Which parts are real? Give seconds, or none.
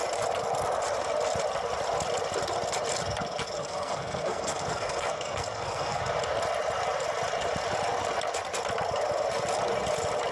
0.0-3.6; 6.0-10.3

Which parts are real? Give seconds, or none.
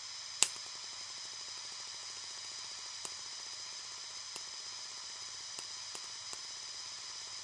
0.0-2.0; 2.6-7.4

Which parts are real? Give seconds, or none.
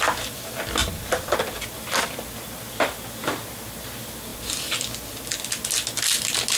0.0-6.6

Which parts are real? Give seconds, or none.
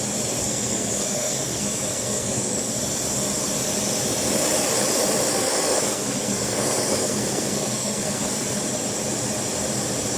0.0-0.4; 2.8-5.3; 8.6-10.2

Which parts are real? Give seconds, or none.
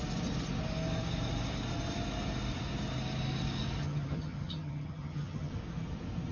0.0-3.8; 5.5-6.3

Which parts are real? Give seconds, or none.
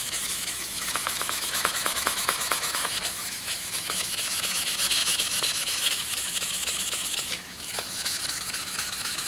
none